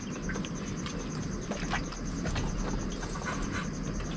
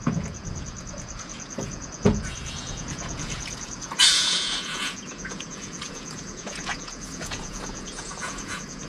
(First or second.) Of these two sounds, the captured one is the first